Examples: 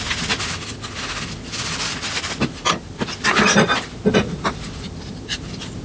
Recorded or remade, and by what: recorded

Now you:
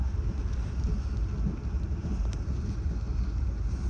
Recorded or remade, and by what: recorded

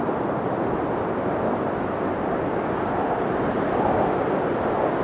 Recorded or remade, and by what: recorded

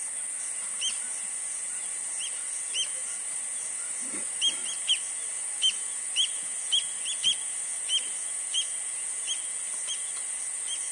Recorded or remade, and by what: recorded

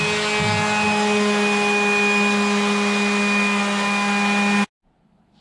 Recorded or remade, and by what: recorded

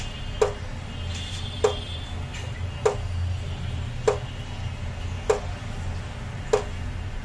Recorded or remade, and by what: recorded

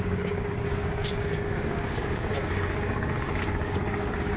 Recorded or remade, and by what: remade, codec, DAC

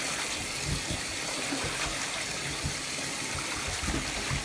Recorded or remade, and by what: recorded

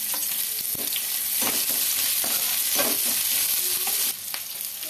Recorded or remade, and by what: recorded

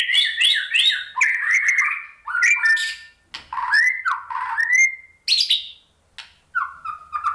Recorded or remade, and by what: recorded